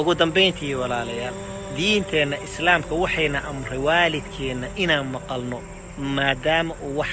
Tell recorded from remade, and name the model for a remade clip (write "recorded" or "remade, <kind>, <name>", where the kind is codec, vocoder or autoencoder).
recorded